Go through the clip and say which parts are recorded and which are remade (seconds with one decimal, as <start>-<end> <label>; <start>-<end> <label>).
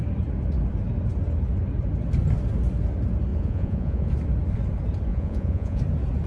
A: 0.0-3.3 recorded; 3.3-4.1 remade; 4.1-5.1 recorded; 5.1-5.8 remade; 5.8-6.3 recorded